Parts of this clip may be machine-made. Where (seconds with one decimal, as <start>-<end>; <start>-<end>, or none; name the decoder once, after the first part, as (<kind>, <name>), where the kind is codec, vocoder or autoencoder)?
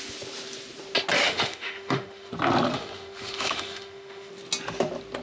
1.2-2.3 (autoencoder, DAC-VAE); 2.7-4.3